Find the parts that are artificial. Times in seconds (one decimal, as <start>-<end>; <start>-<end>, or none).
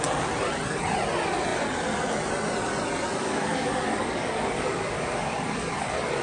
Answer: 3.2-6.2